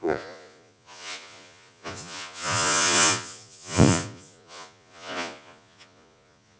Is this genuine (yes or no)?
no